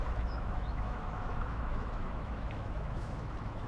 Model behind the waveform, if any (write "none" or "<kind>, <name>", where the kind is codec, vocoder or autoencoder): autoencoder, DAC-VAE